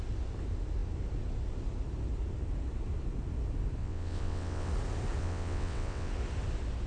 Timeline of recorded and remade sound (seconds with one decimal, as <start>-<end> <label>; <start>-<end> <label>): 0.0-3.8 recorded; 3.8-4.7 remade; 4.7-5.2 recorded; 5.2-6.1 remade; 6.1-6.9 recorded